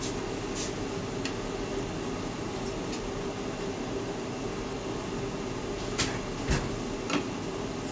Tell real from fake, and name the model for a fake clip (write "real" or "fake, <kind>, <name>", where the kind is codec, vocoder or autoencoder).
real